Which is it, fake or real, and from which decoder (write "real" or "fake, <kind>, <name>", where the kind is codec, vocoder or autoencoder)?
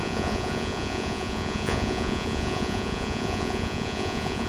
fake, vocoder, Vocos